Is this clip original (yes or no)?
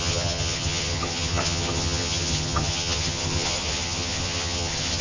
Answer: no